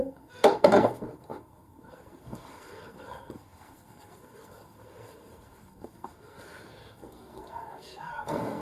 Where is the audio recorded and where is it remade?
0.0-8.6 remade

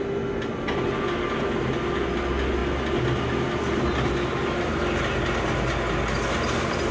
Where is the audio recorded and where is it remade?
0.0-6.9 recorded

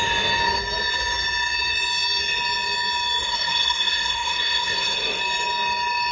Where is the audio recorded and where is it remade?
0.0-3.2 recorded; 3.2-5.2 remade; 5.2-6.1 recorded

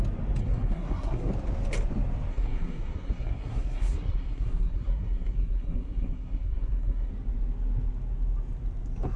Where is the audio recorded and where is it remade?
0.0-0.4 recorded; 0.4-1.3 remade; 1.3-2.3 recorded; 2.3-7.1 remade; 7.1-9.2 recorded

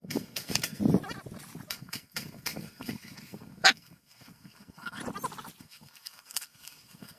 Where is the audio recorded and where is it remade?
0.0-0.8 remade; 0.8-1.7 recorded; 1.7-5.0 remade; 5.0-5.6 recorded; 5.6-7.2 remade

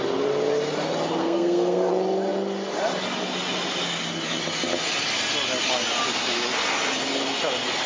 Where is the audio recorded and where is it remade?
0.0-1.2 recorded; 1.2-1.9 remade; 1.9-7.9 recorded

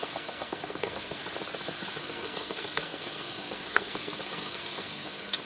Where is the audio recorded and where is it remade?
0.0-1.2 remade; 1.2-2.0 recorded; 2.0-5.4 remade